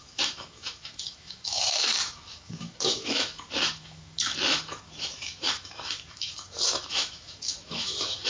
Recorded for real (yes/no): no